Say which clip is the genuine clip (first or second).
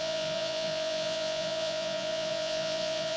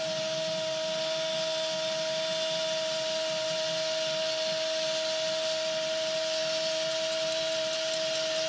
second